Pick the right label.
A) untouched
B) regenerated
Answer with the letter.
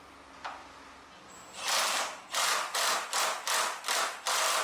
A